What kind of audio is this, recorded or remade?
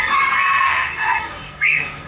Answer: remade